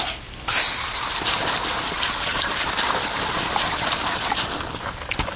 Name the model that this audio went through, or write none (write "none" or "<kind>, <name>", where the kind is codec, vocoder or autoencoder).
none